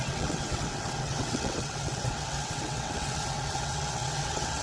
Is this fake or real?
fake